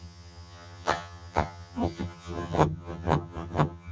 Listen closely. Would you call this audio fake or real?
fake